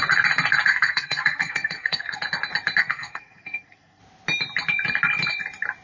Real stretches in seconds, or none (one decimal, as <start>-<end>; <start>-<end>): 0.0-0.7; 2.2-2.8; 4.0-5.8